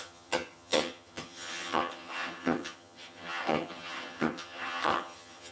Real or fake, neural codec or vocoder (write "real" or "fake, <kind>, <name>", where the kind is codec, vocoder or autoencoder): fake, vocoder, HiFi-GAN